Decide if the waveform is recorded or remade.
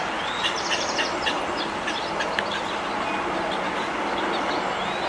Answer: recorded